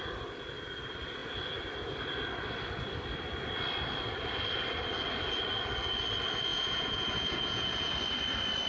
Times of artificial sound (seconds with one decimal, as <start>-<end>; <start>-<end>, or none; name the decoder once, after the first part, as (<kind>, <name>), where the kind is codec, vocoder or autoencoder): 6.5-7.9 (vocoder, Vocos)